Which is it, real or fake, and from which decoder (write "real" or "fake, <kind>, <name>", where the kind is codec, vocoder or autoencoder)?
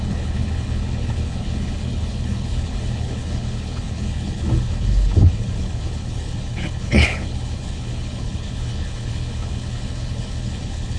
fake, codec, HILCodec